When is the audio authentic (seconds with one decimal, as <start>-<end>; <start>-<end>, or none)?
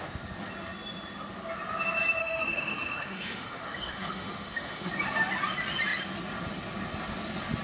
0.0-2.2; 4.9-7.6